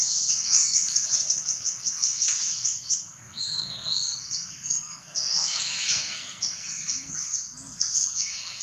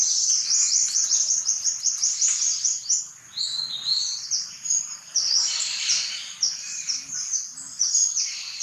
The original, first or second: second